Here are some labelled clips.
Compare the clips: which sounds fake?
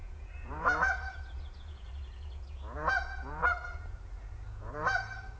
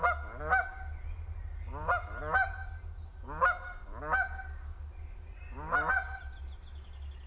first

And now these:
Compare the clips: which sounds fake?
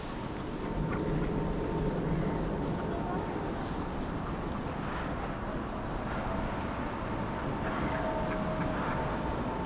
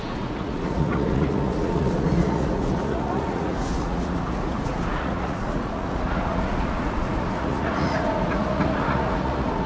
second